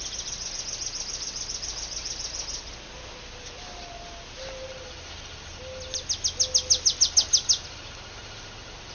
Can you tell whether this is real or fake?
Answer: real